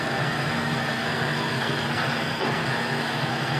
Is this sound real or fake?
fake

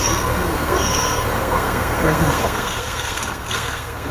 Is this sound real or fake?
fake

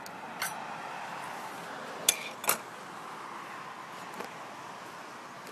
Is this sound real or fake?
real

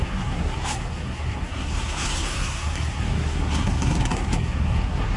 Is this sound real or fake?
fake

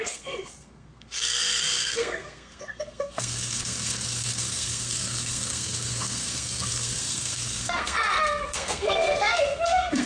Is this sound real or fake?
fake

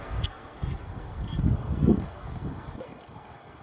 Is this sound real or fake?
fake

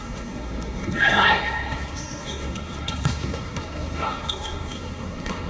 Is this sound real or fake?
fake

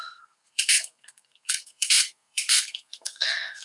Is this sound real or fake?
fake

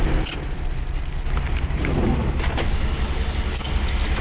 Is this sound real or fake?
real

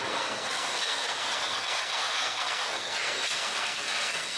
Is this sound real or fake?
fake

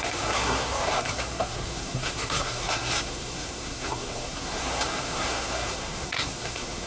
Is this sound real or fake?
fake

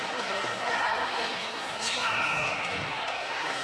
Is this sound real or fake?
fake